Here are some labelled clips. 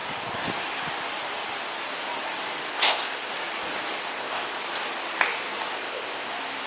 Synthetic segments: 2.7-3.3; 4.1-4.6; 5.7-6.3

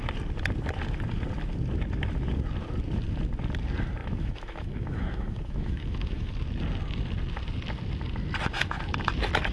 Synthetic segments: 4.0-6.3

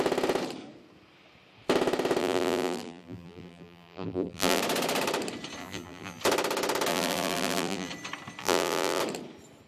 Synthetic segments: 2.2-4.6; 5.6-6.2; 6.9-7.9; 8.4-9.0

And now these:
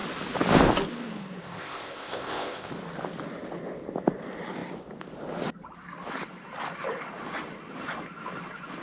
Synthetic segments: 1.4-2.7

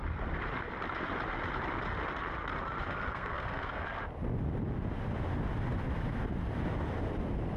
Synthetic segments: 3.1-3.8

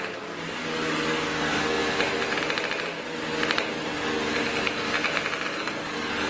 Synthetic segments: 0.0-1.8; 5.6-6.3